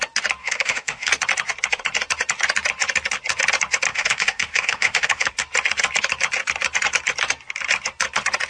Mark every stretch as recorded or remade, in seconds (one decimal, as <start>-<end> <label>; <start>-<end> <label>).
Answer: 0.0-0.4 recorded; 0.4-1.1 remade; 1.1-3.9 recorded; 3.9-5.3 remade; 5.3-8.5 recorded